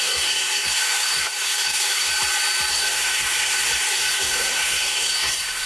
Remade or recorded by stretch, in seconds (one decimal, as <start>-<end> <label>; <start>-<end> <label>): 0.0-2.1 remade; 2.1-2.7 recorded; 2.7-5.7 remade